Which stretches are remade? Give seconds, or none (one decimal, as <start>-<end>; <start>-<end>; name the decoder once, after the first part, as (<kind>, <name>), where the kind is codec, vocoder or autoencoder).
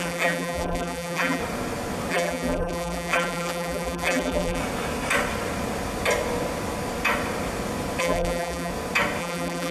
0.0-1.4 (vocoder, BigVGAN v2); 2.1-4.6; 8.0-8.7; 9.2-9.7